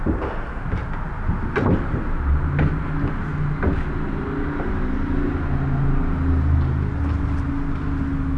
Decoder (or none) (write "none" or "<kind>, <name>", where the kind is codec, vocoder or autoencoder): none